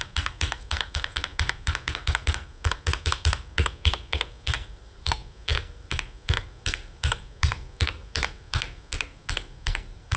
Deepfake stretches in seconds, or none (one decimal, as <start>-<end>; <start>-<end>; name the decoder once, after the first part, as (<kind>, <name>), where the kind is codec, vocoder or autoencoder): 0.0-10.2 (codec, SNAC)